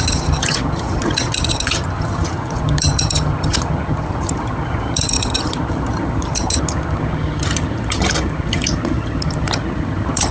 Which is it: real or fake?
fake